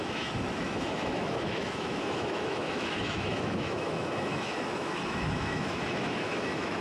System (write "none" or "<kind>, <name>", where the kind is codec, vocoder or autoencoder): autoencoder, DAC-VAE